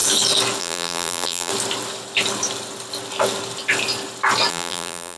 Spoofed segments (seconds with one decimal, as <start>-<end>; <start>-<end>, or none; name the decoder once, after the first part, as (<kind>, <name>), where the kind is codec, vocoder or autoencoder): 0.6-1.5 (vocoder, BigVGAN v2); 4.5-5.2